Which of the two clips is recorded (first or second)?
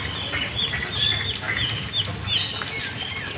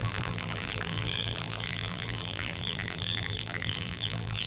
first